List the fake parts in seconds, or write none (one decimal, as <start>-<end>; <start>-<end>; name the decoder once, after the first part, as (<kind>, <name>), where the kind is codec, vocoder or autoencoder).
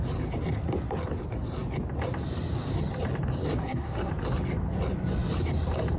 3.6-4.1 (codec, SNAC)